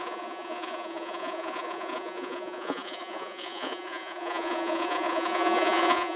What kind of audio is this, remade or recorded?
remade